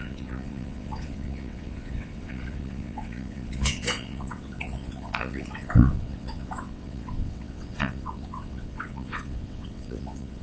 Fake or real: fake